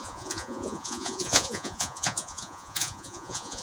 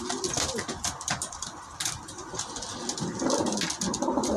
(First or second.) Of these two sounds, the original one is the second